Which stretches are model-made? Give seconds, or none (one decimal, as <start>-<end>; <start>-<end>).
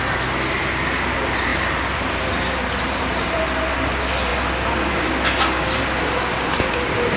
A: 1.5-3.4